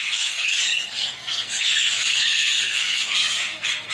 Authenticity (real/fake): fake